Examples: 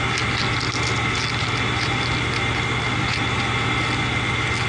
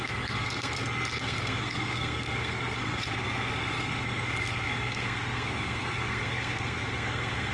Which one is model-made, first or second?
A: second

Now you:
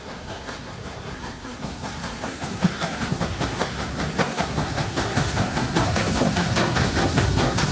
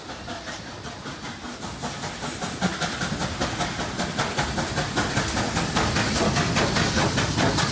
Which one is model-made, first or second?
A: first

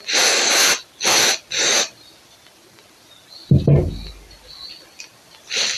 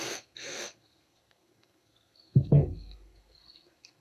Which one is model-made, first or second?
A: second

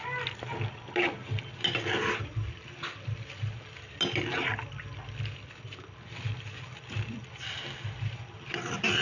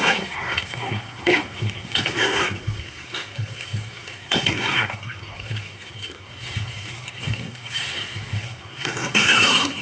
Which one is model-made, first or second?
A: second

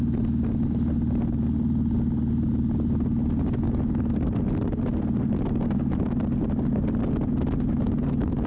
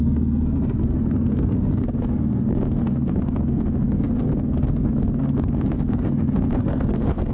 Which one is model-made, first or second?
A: second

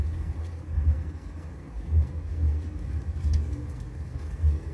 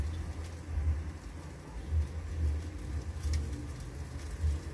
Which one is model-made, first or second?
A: first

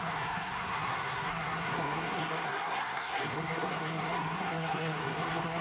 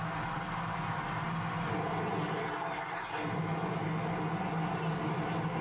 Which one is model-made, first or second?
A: first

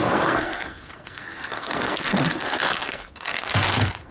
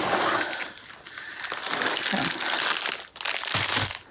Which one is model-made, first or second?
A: first